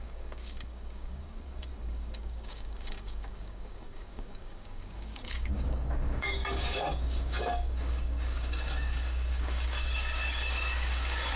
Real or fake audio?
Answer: fake